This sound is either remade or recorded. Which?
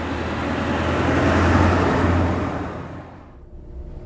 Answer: recorded